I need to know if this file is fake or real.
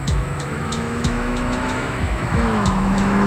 fake